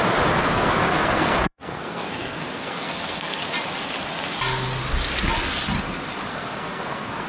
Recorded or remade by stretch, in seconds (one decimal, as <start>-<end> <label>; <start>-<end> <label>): 0.0-0.4 recorded; 0.4-3.4 remade; 3.4-6.3 recorded; 6.3-7.3 remade